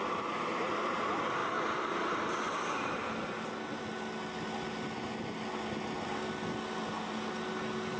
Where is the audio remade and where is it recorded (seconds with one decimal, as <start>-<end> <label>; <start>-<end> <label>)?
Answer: 0.0-8.0 recorded